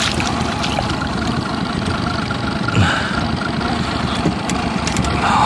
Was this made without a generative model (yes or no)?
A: yes